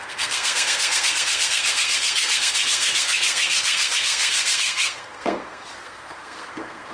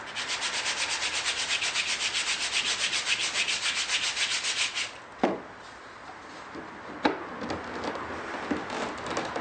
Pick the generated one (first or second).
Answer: first